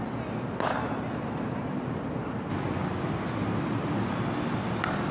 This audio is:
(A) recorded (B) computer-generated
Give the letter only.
A